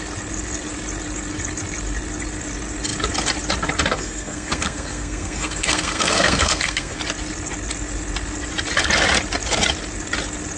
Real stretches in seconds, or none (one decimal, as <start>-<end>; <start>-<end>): 0.0-3.9; 7.0-10.6